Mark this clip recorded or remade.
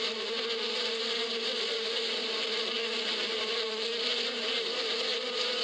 recorded